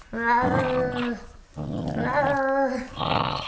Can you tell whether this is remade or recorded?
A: recorded